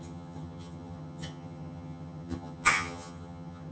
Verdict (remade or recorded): remade